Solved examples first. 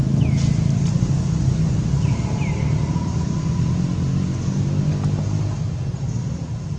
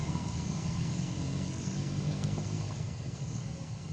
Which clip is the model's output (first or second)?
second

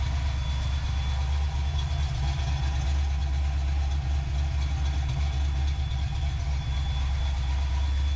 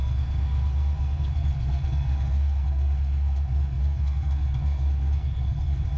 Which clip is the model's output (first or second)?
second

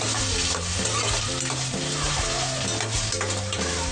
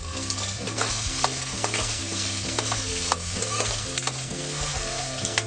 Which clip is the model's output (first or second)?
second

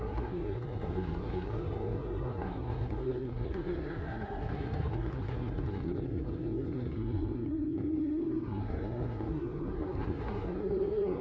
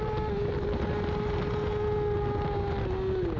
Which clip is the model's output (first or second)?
first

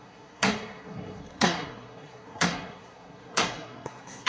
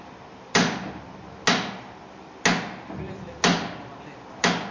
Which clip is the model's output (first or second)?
first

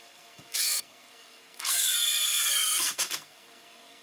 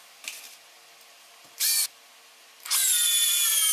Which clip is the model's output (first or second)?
first